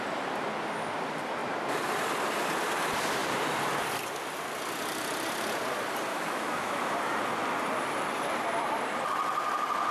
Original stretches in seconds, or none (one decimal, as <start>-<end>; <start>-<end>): 0.0-6.1; 6.8-9.9